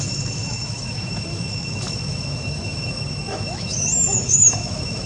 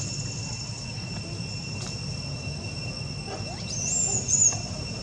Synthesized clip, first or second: first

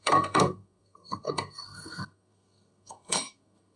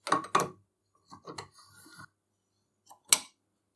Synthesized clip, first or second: first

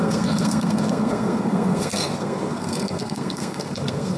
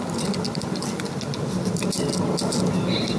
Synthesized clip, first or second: first